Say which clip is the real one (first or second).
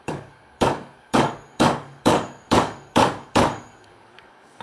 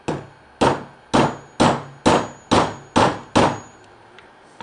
second